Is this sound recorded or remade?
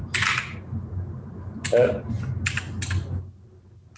recorded